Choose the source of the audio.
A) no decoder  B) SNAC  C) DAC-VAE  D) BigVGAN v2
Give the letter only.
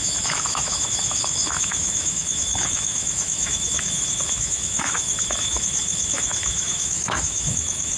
C